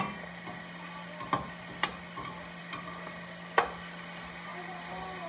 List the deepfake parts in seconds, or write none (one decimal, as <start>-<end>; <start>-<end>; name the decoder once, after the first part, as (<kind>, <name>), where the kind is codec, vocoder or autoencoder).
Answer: none